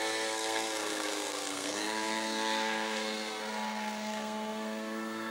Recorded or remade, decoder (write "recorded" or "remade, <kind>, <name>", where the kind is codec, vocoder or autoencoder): remade, codec, SNAC